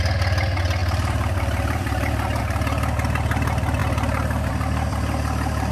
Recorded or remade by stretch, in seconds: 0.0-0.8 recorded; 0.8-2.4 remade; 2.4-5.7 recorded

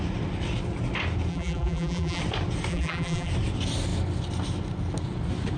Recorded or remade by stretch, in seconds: 0.0-1.3 recorded; 1.3-2.2 remade; 2.2-2.7 recorded; 2.7-3.3 remade; 3.3-5.6 recorded

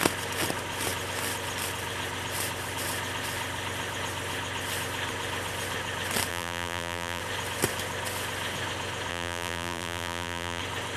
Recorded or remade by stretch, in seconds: 0.0-6.3 recorded; 6.3-7.2 remade; 7.2-9.1 recorded; 9.1-10.6 remade; 10.6-11.0 recorded

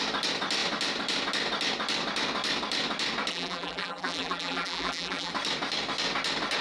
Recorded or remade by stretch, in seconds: 0.0-3.3 recorded; 3.3-5.3 remade; 5.3-6.6 recorded

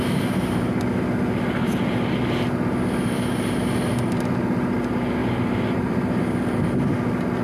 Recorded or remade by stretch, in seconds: 0.0-5.2 recorded; 5.2-6.2 remade; 6.2-7.4 recorded

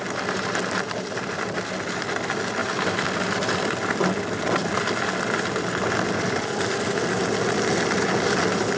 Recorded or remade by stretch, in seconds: 0.0-2.6 recorded; 2.6-4.0 remade; 4.0-4.6 recorded; 4.6-7.2 remade; 7.2-8.8 recorded

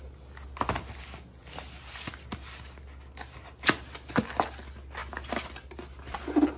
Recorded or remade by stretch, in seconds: 0.0-6.6 recorded